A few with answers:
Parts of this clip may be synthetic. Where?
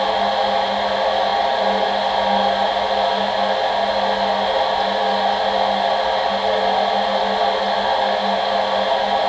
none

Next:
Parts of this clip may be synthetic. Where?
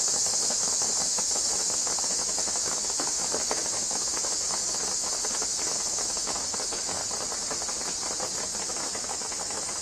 0.0-7.0 (autoencoder, DAC-VAE); 8.7-9.8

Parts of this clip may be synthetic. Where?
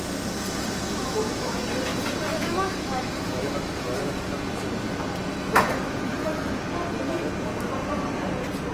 0.9-1.6 (autoencoder, DAC-VAE); 2.3-4.3; 5.3-6.6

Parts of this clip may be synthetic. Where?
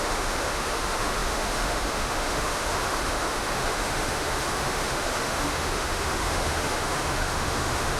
0.0-8.0 (autoencoder, DAC-VAE)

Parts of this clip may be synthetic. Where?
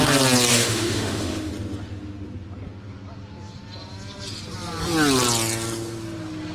0.5-1.5 (autoencoder, DAC-VAE)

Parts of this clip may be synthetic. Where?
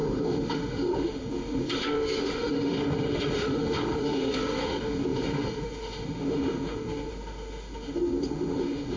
0.0-9.0 (autoencoder, DAC-VAE)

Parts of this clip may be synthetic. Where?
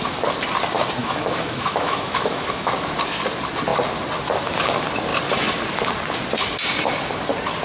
1.0-2.7 (autoencoder, DAC-VAE)